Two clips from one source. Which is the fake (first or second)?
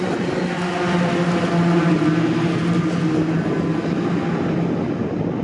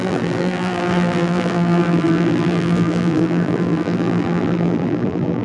second